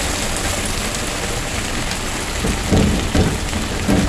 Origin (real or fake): real